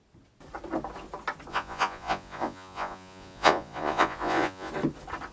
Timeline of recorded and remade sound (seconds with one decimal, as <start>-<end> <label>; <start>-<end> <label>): 0.0-1.5 recorded; 1.5-4.7 remade; 4.7-5.3 recorded